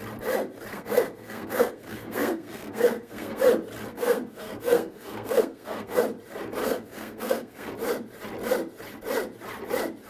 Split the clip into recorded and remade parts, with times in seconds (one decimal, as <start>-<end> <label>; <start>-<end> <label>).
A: 0.0-0.7 recorded; 0.7-3.4 remade; 3.4-3.9 recorded; 3.9-6.0 remade; 6.0-6.6 recorded; 6.6-7.7 remade; 7.7-10.1 recorded

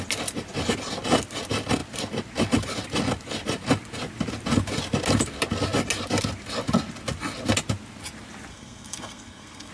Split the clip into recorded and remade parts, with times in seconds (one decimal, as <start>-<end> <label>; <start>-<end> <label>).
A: 0.0-8.5 recorded; 8.5-9.7 remade

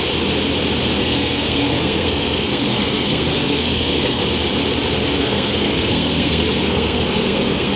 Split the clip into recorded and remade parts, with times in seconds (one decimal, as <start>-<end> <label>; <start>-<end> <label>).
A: 0.0-1.0 recorded; 1.0-4.2 remade; 4.2-5.2 recorded; 5.2-7.8 remade

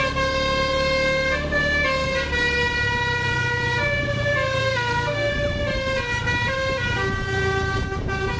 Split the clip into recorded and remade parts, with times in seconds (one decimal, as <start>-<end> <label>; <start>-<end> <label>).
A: 0.0-4.6 recorded; 4.6-5.3 remade; 5.3-8.4 recorded

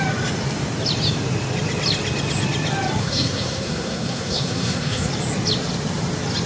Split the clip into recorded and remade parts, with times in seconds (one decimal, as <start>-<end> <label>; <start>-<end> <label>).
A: 0.0-3.0 recorded; 3.0-5.1 remade; 5.1-6.5 recorded

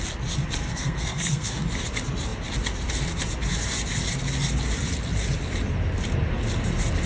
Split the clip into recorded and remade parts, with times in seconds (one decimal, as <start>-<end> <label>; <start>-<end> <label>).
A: 0.0-0.7 recorded; 0.7-1.5 remade; 1.5-7.1 recorded